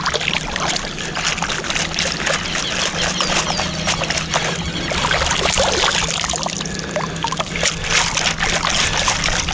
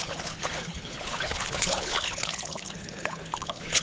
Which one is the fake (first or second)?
second